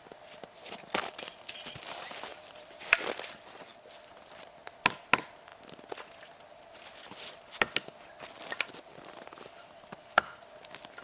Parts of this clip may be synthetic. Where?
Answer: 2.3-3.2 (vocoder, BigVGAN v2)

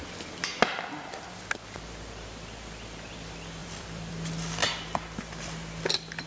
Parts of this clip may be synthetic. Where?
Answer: 3.6-4.1 (vocoder, BigVGAN v2)

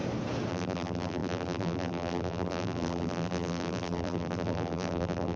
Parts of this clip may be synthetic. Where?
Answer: 0.5-5.4 (vocoder, BigVGAN v2)

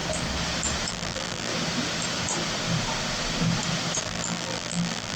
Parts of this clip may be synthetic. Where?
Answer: 0.9-1.5 (vocoder, BigVGAN v2); 4.0-5.2

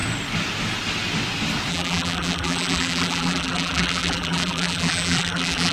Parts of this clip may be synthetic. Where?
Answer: 1.7-5.7 (vocoder, BigVGAN v2)

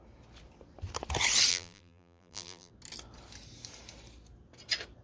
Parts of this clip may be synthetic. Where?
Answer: 1.5-2.7 (vocoder, BigVGAN v2)